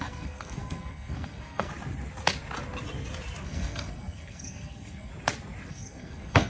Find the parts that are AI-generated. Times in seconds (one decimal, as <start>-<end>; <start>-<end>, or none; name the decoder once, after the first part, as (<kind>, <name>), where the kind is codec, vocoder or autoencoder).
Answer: 0.0-1.7 (codec, SNAC); 3.4-5.1; 5.7-6.5